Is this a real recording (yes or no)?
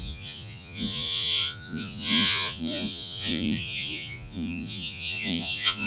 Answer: no